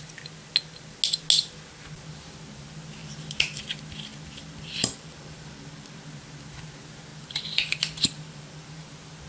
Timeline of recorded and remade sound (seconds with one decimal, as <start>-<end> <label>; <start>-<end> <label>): 0.0-3.0 recorded; 3.0-3.6 remade; 3.6-4.1 recorded; 4.1-6.1 remade; 6.1-7.1 recorded; 7.1-8.7 remade; 8.7-9.3 recorded